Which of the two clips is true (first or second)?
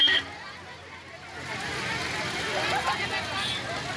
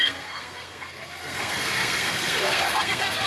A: first